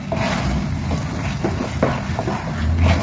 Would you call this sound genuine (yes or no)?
yes